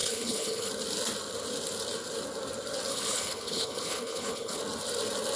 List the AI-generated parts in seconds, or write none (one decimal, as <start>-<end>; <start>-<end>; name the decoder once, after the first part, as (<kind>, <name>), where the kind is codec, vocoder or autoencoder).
0.0-0.7 (codec, HILCodec); 2.9-4.6